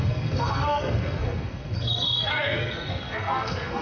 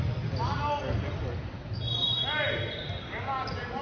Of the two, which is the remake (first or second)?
first